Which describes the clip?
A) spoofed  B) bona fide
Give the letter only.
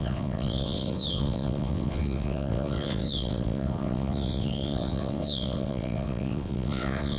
A